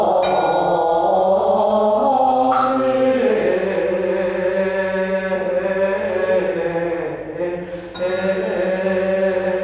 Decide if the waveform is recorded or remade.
recorded